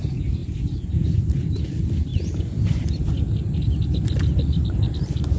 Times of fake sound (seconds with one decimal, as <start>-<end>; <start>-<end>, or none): none

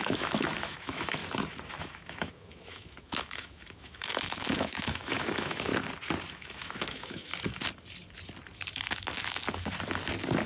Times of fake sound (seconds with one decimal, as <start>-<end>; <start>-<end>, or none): 0.0-1.2; 1.8-5.7; 6.3-7.3

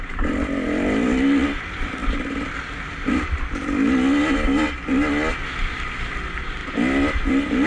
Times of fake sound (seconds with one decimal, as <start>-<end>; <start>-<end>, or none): none

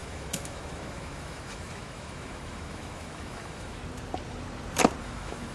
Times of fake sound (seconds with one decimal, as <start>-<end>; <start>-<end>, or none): 0.0-3.8; 5.0-5.5

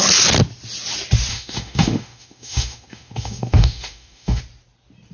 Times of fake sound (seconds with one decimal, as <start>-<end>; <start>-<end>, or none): 1.3-4.4

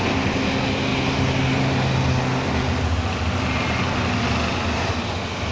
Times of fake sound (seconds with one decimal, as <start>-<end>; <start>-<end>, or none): none

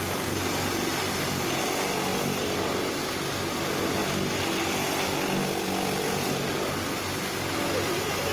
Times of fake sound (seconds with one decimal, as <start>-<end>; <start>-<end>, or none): none